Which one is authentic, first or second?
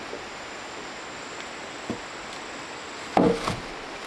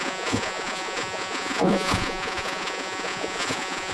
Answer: first